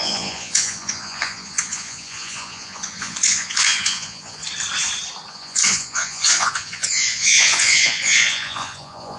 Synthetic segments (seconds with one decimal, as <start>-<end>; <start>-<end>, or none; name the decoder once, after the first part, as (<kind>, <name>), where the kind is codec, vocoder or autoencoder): 0.0-4.4 (vocoder, Vocos); 5.3-9.2